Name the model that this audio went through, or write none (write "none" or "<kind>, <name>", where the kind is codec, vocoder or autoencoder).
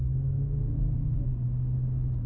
none